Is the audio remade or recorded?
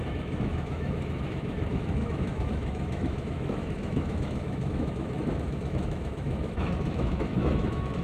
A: remade